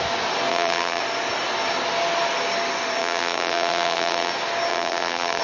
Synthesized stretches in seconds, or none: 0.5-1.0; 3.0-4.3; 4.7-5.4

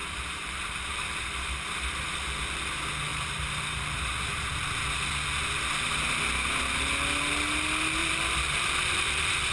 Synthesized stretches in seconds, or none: 0.0-2.4; 3.1-4.1; 8.0-9.5